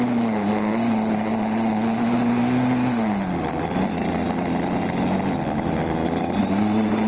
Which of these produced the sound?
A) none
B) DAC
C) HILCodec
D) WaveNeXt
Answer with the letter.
A